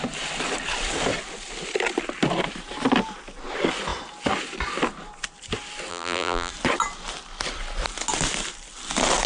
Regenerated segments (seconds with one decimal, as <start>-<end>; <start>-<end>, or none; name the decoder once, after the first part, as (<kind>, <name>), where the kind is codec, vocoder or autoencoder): 5.9-6.5 (vocoder, BigVGAN v2)